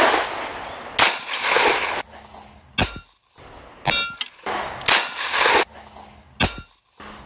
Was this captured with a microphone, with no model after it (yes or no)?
yes